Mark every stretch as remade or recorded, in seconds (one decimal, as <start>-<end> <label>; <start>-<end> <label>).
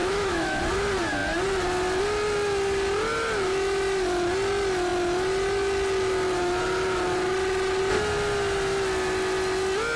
0.0-0.6 remade; 0.6-10.0 recorded